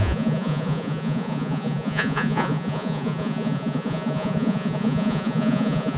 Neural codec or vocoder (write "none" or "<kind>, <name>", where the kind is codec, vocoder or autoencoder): vocoder, Vocos